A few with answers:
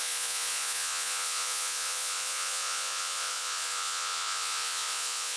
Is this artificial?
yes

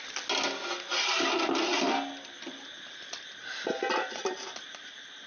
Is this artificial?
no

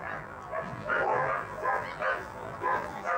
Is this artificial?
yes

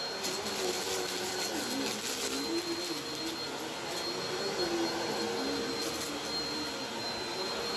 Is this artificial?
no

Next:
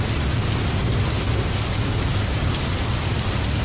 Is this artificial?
no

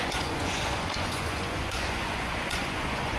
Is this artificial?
yes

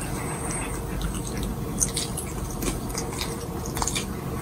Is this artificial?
no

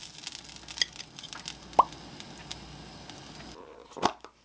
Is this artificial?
no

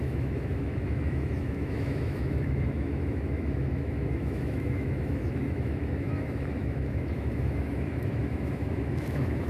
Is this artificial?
yes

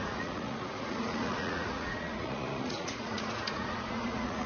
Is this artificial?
yes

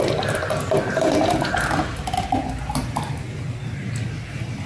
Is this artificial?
no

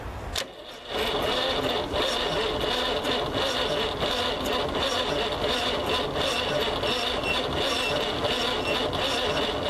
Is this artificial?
no